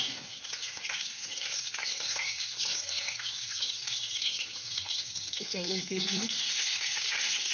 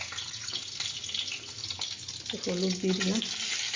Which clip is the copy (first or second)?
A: first